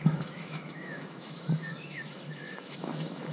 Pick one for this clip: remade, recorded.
remade